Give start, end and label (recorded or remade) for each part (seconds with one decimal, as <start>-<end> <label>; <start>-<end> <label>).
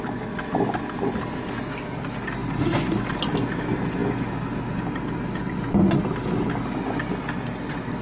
0.0-8.0 recorded